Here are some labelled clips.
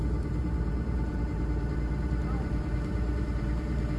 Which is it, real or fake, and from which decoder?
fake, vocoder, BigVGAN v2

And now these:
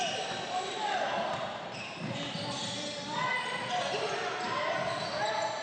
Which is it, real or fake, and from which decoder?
real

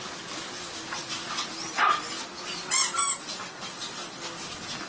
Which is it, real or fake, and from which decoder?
real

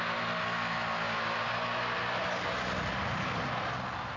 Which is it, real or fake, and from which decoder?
real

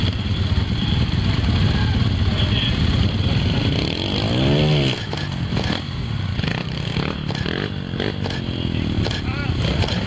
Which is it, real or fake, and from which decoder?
real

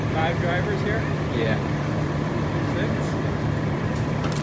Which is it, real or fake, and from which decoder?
fake, vocoder, BigVGAN v2